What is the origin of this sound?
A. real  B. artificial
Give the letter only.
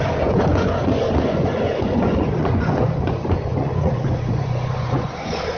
B